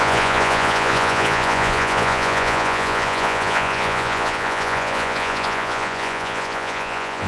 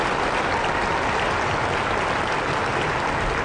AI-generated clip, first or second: first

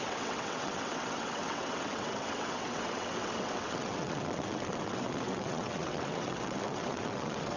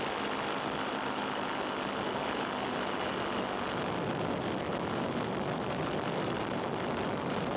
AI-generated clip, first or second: first